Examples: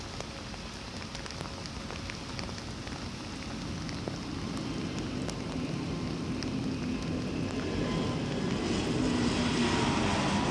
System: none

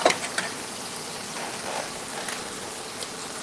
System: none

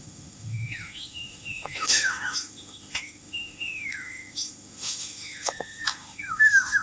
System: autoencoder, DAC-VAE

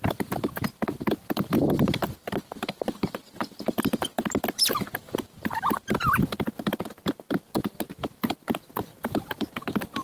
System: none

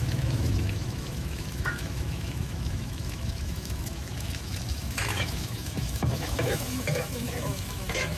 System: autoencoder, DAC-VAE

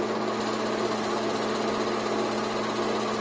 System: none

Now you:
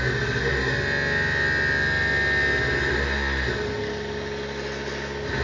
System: none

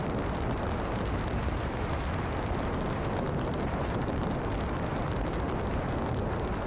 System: none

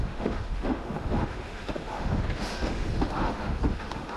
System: autoencoder, DAC-VAE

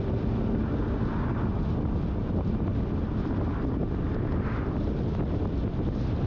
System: none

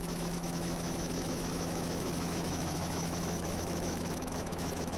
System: autoencoder, DAC-VAE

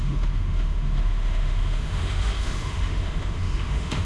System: autoencoder, DAC-VAE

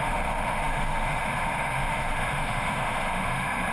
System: autoencoder, DAC-VAE